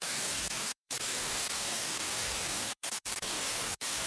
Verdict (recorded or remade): remade